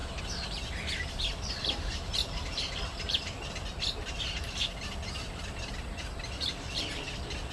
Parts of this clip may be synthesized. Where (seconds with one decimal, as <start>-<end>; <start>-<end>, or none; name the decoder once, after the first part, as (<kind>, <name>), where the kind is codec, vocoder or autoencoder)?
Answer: none